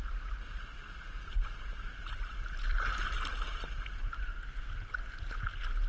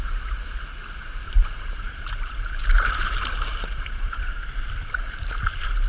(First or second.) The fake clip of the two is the second